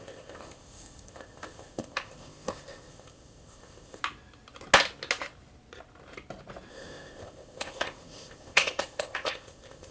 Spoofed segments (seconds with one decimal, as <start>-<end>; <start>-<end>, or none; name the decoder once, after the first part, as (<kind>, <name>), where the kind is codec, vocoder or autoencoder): 0.0-4.0 (codec, ZipCodec); 6.7-9.9